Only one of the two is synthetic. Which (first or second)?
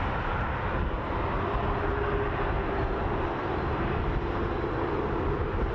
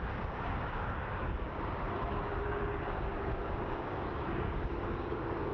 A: second